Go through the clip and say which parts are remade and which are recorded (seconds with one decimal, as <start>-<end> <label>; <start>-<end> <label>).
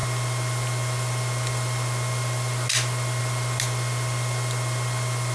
0.0-5.3 recorded